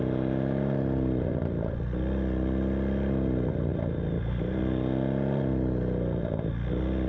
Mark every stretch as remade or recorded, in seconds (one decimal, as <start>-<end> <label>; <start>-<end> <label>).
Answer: 0.0-3.7 recorded; 3.7-4.6 remade; 4.6-7.1 recorded